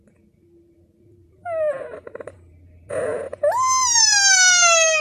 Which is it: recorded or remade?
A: recorded